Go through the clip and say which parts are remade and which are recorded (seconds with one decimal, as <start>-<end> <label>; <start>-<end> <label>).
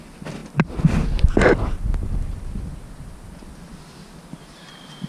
0.0-5.1 recorded